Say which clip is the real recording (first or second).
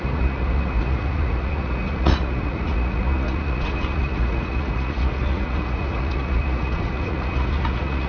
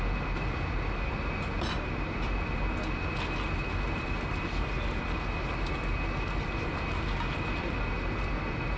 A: second